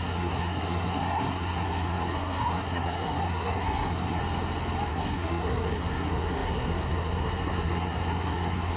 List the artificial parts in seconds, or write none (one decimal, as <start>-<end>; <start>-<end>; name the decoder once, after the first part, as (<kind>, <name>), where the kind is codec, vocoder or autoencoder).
0.0-4.2 (codec, SNAC); 4.9-8.8